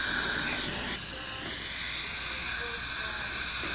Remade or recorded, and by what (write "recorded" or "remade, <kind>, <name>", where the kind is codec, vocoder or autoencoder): recorded